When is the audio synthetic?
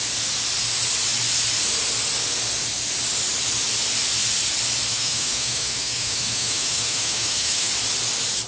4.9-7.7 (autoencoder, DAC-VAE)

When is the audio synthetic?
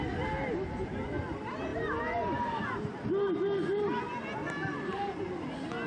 none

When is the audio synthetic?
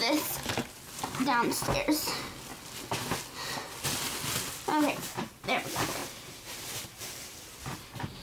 6.0-7.4 (vocoder, BigVGAN v2)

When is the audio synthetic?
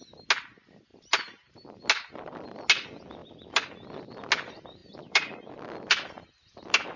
0.9-1.5 (vocoder, BigVGAN v2); 4.8-5.5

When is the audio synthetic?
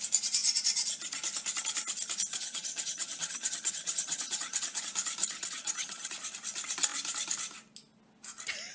2.3-4.8 (vocoder, HiFi-GAN); 5.2-6.1